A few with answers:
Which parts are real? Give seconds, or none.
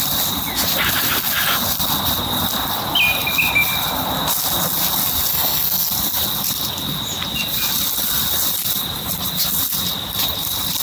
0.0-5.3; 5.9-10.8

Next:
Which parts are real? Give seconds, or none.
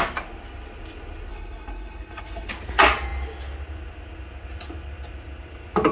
0.0-1.3; 2.5-5.9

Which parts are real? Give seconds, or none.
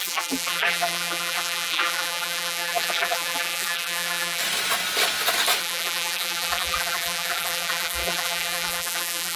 4.4-5.6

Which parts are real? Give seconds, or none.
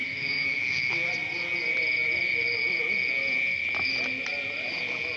1.1-5.2